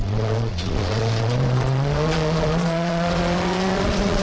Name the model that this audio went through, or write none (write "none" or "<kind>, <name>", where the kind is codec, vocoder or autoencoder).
vocoder, Vocos